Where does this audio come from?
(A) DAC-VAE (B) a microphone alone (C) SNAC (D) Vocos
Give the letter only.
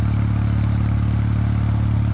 B